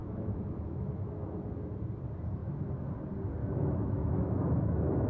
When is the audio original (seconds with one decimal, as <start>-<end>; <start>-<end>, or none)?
0.9-2.4; 2.9-3.4